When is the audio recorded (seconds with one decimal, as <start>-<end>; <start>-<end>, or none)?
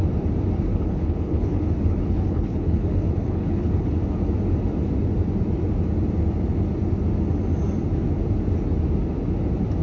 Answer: 0.0-0.7; 3.9-9.8